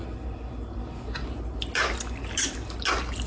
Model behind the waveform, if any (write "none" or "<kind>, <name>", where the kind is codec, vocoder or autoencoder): none